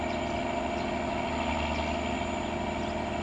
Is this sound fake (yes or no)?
no